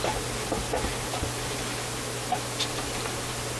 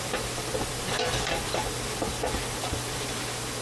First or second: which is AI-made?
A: second